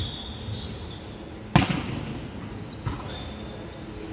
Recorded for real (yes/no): yes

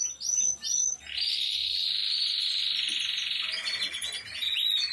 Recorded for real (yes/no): yes